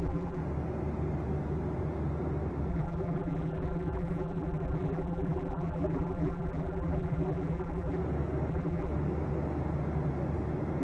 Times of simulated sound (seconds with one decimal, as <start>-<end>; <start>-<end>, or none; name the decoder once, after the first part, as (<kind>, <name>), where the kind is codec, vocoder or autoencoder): 0.0-0.4 (vocoder, BigVGAN v2); 2.7-8.0; 8.5-8.9